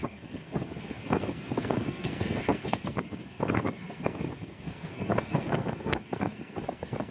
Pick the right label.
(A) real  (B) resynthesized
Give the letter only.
B